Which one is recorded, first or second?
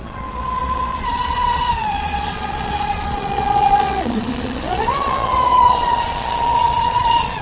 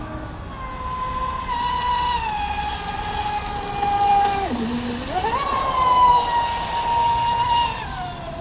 second